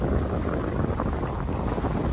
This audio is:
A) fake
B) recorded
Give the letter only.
B